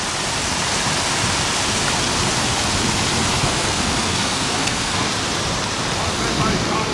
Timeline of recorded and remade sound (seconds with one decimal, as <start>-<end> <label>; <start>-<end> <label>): 0.0-3.3 recorded; 3.3-5.1 remade; 5.1-6.9 recorded